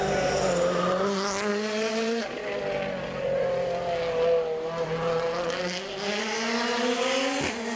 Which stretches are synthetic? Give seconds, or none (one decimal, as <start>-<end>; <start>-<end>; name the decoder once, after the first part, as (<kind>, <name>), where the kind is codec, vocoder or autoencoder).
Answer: none